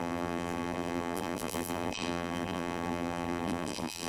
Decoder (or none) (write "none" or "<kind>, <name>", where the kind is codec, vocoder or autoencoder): vocoder, BigVGAN v2